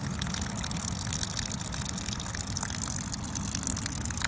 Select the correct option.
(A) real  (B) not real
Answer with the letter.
A